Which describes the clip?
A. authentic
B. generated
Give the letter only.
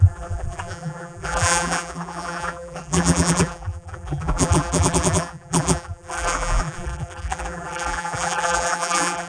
B